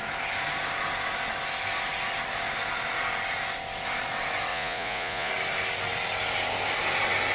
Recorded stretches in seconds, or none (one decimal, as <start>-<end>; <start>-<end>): 0.0-4.5; 5.3-7.3